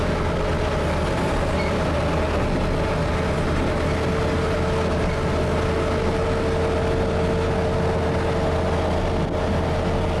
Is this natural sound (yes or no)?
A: yes